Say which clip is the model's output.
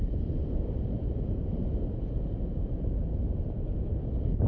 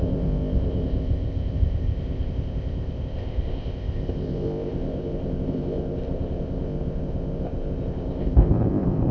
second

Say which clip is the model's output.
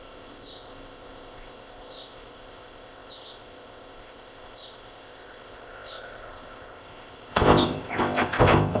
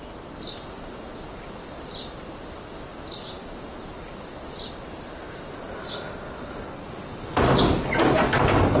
first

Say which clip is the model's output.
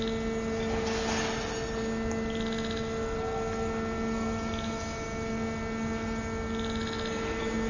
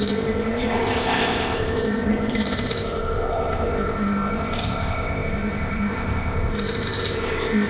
second